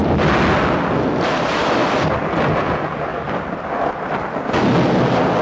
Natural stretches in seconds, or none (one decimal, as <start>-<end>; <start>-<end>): 0.0-2.6; 3.1-5.4

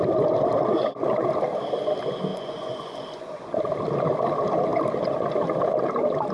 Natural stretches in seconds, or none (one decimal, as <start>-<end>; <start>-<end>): 0.0-2.3; 3.5-6.3

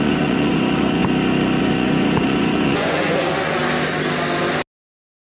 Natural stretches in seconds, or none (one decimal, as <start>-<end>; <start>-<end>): 1.0-1.6; 3.6-5.2

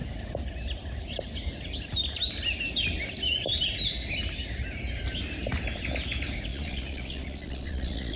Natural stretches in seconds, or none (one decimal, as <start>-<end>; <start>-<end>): 0.0-6.5